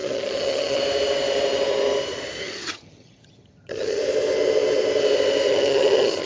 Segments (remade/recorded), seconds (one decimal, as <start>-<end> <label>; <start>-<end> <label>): 0.0-0.8 remade; 0.8-2.4 recorded; 2.4-4.0 remade; 4.0-5.5 recorded; 5.5-6.3 remade